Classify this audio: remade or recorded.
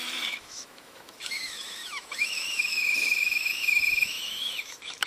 remade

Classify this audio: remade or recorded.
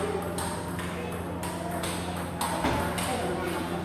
recorded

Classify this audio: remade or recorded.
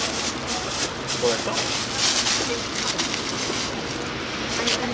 recorded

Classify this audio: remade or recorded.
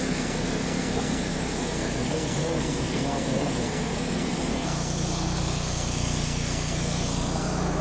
remade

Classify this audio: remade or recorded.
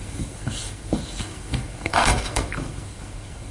remade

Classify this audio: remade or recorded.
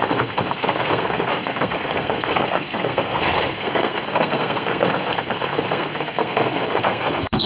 remade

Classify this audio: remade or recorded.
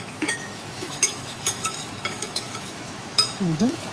remade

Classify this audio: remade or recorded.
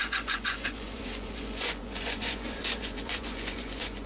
remade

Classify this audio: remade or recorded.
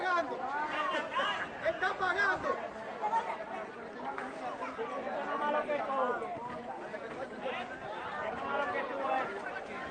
recorded